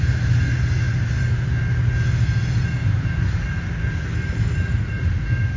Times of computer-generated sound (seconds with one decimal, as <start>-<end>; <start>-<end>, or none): 0.9-1.6; 2.8-4.8